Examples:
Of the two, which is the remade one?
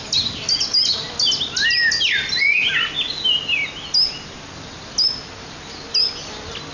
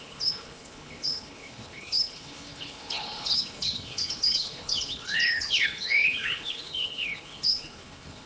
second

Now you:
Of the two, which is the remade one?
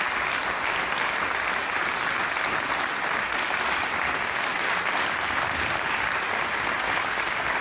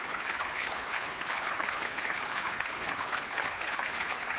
second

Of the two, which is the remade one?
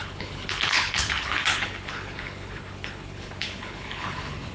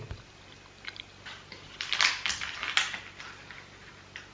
first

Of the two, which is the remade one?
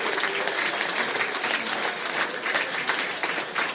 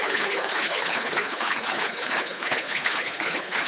second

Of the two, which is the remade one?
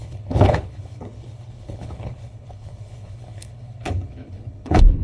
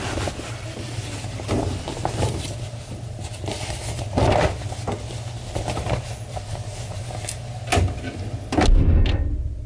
first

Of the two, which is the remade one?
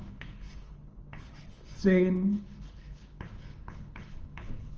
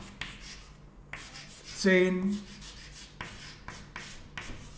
first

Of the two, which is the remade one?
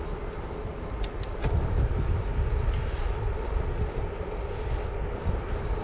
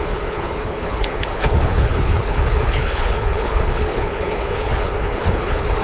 second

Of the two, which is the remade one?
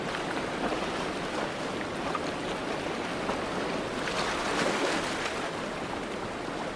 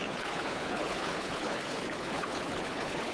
second